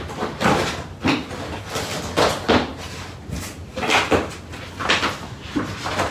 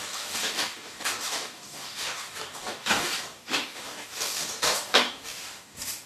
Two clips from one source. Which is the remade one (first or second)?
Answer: second